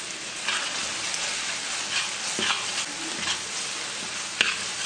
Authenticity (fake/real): real